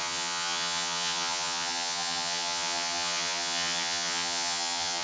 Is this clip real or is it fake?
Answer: fake